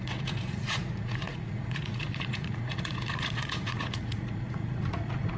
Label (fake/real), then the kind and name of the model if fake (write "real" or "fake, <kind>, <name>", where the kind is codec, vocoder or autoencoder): fake, vocoder, Vocos